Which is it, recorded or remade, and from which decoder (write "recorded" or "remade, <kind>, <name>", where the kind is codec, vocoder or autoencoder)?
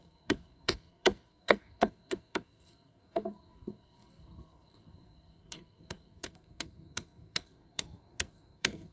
remade, codec, SNAC